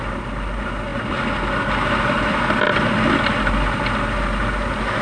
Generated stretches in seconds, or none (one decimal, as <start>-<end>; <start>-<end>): none